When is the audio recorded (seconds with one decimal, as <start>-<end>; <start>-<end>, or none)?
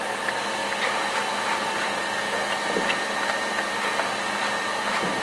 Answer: 0.0-5.2